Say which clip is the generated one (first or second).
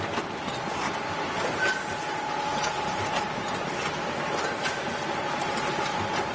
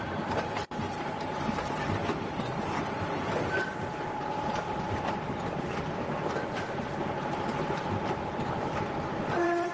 second